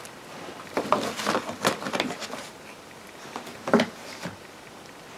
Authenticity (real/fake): real